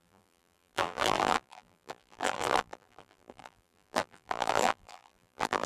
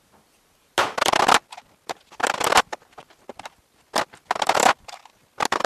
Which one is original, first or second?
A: second